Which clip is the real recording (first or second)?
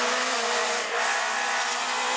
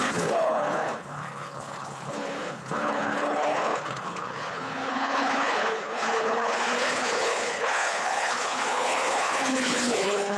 first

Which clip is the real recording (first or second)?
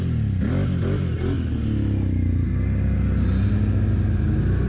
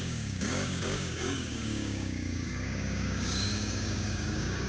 first